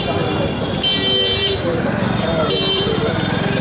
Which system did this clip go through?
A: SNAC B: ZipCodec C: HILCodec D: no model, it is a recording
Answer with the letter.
D